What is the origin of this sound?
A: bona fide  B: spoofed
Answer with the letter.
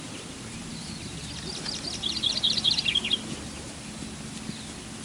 A